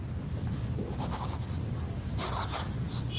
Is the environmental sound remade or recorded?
recorded